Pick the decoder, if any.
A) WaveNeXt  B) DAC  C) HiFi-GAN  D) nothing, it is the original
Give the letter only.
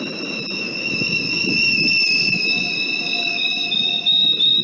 D